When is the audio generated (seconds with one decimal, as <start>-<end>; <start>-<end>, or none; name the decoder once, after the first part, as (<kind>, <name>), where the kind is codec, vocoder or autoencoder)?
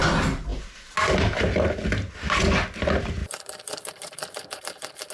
3.2-5.1 (vocoder, BigVGAN v2)